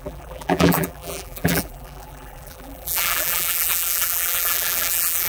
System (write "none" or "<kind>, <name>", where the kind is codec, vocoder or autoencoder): vocoder, BigVGAN v2